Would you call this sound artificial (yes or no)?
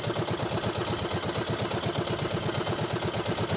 no